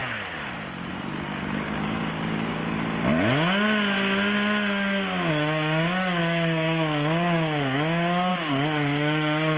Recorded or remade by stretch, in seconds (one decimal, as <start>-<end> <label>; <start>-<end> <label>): 0.0-0.9 recorded; 0.9-2.6 remade; 2.6-5.3 recorded; 5.3-9.6 remade